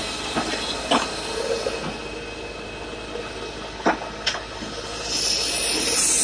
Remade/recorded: recorded